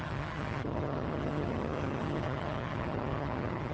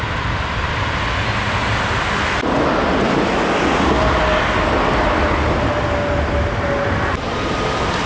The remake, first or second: first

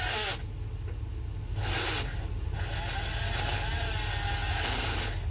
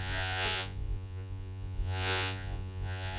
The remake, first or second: second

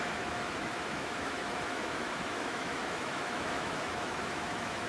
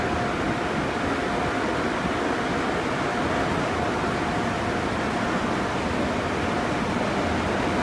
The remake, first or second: first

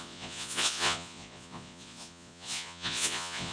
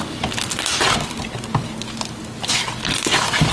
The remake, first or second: first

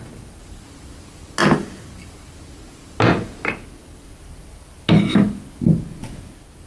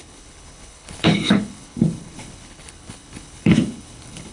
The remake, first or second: second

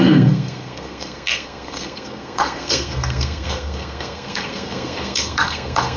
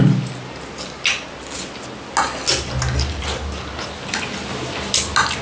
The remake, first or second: first